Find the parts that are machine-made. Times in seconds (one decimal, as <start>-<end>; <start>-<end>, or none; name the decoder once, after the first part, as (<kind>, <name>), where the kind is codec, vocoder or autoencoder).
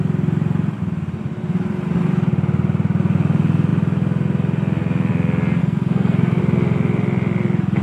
5.6-6.4 (codec, SNAC)